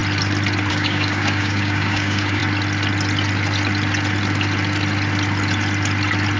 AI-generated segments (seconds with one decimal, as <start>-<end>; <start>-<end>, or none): 0.7-2.4